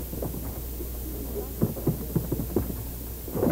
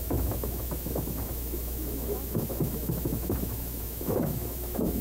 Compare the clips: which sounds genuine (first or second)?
first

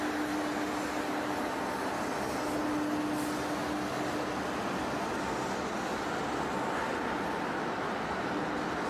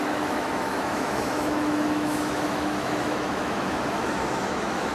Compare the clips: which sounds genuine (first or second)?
first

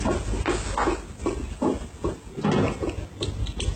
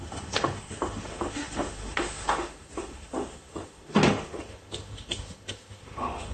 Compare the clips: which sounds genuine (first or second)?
first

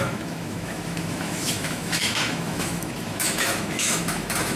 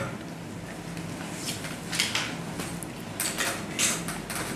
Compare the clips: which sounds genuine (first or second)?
second